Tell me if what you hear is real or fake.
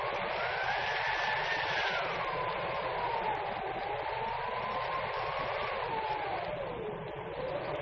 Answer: real